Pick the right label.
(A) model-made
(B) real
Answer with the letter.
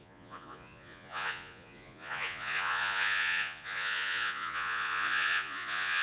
A